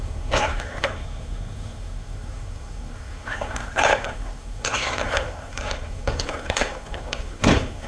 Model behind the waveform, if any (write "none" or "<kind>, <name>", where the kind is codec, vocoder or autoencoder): codec, SNAC